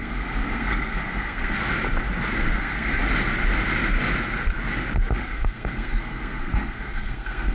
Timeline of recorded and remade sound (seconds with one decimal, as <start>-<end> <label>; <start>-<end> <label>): 0.0-1.6 remade; 1.6-2.6 recorded; 2.6-3.0 remade; 3.0-5.2 recorded; 5.2-7.5 remade